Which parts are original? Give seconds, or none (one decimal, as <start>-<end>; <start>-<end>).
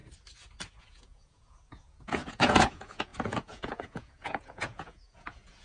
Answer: 0.0-0.8